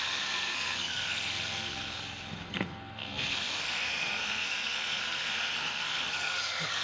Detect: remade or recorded remade